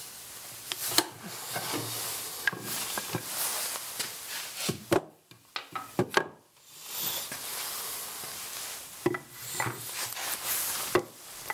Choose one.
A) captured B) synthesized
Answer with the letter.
A